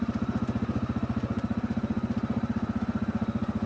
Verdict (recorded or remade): recorded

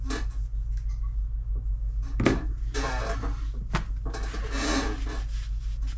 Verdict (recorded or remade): recorded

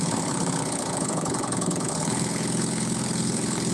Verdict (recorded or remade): remade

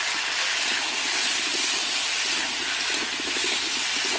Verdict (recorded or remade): recorded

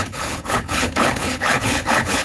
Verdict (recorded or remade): remade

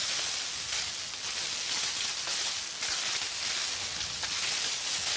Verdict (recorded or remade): recorded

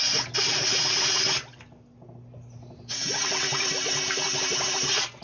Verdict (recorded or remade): recorded